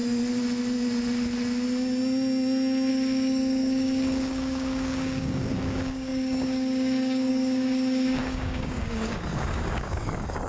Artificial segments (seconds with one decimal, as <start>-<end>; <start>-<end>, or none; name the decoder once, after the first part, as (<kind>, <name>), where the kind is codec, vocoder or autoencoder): 2.9-10.5 (codec, DAC)